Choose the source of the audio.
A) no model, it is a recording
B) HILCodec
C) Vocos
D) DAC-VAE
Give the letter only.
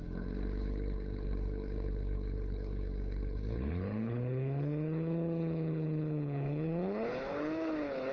B